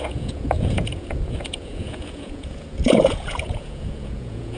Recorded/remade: remade